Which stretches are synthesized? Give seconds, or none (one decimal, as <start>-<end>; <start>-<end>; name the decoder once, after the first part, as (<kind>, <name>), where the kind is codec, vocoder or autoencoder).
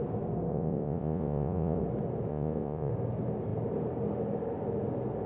0.5-1.8 (vocoder, Vocos); 2.3-2.9